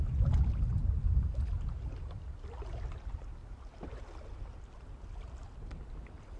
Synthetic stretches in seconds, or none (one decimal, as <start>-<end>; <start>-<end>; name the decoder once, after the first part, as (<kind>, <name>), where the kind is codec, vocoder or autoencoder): none